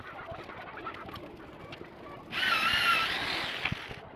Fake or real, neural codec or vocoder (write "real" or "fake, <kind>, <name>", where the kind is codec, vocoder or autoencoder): real